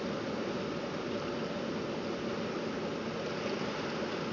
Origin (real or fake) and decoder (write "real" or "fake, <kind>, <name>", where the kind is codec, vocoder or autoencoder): real